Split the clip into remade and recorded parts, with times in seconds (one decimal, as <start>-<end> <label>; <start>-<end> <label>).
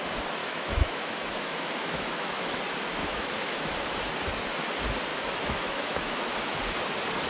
0.0-0.4 recorded; 0.4-2.6 remade; 2.6-3.0 recorded; 3.0-3.7 remade; 3.7-5.1 recorded; 5.1-6.6 remade; 6.6-7.3 recorded